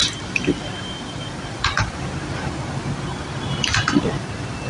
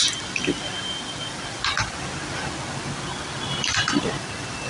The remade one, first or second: first